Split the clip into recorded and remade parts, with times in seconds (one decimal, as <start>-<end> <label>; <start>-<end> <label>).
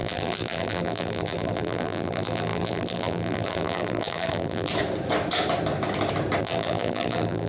0.0-4.7 remade; 4.7-6.4 recorded; 6.4-7.5 remade